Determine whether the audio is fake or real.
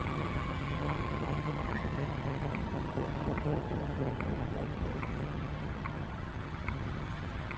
fake